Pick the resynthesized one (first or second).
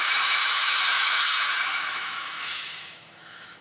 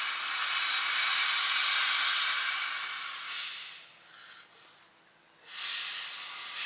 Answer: first